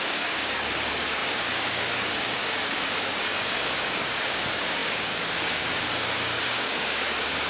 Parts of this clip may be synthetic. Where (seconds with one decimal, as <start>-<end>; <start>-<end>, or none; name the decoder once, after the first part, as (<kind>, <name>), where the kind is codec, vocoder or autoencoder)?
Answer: 0.0-7.5 (codec, DAC)